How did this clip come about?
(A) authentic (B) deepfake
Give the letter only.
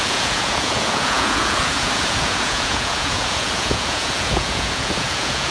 B